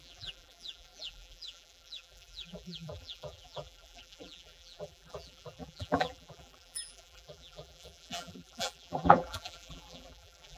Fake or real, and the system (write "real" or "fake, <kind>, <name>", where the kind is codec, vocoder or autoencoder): fake, vocoder, BigVGAN v2